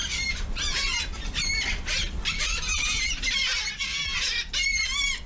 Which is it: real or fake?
real